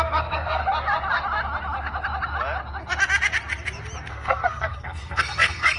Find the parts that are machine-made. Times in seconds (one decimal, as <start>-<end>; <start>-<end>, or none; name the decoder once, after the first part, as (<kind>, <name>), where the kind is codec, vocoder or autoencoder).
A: 0.0-0.6 (codec, SNAC); 4.1-5.8